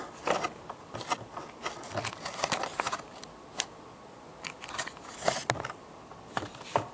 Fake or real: real